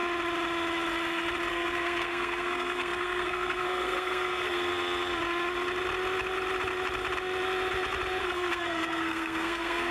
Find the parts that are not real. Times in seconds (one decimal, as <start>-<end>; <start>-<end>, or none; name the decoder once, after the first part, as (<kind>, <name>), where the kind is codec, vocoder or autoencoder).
1.5-4.7 (codec, SNAC); 8.2-9.9

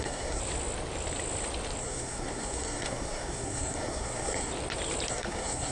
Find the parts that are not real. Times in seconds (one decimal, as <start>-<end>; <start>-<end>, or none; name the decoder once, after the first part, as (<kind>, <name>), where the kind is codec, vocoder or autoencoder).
0.0-0.4 (codec, SNAC); 1.8-4.5; 5.1-5.7

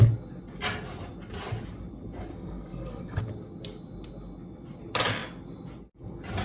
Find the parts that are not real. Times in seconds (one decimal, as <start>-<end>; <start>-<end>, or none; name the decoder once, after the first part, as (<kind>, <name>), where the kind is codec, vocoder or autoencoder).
2.3-3.2 (codec, SNAC)